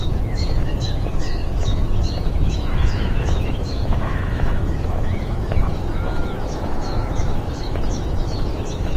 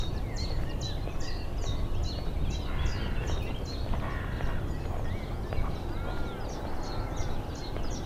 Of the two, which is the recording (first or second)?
second